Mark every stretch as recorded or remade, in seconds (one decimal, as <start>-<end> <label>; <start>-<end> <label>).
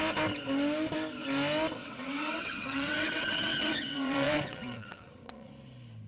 0.0-1.8 recorded; 1.8-5.5 remade; 5.5-6.1 recorded